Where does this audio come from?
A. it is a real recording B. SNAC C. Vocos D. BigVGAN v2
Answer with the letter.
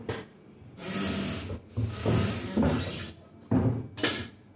A